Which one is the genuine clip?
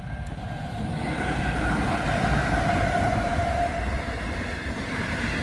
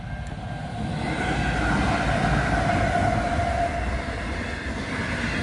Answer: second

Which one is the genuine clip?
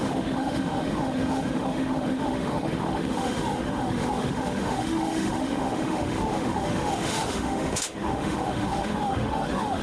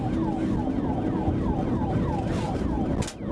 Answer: second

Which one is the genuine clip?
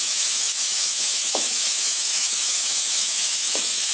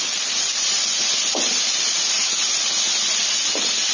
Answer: second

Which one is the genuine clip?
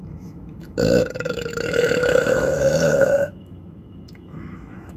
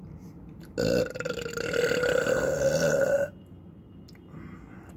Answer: second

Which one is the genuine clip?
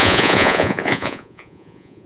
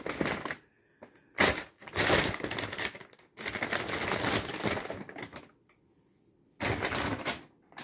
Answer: second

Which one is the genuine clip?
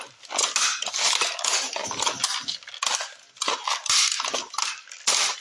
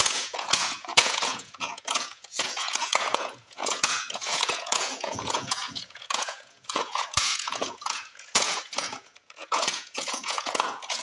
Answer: first